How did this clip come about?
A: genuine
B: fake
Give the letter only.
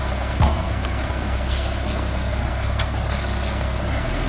B